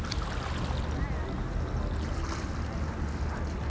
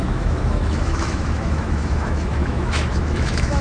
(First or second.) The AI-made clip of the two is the second